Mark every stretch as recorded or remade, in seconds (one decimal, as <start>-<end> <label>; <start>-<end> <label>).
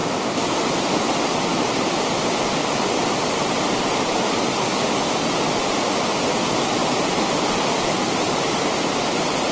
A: 0.0-0.6 remade; 0.6-1.5 recorded; 1.5-5.9 remade; 5.9-6.8 recorded; 6.8-8.2 remade; 8.2-9.5 recorded